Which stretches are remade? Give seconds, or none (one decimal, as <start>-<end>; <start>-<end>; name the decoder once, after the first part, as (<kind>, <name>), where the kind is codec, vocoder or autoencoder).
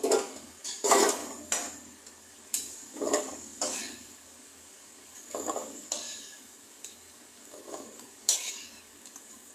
0.0-1.2 (codec, DAC); 2.2-9.5